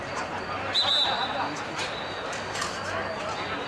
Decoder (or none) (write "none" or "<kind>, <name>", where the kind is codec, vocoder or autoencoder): none